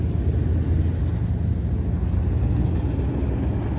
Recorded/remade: recorded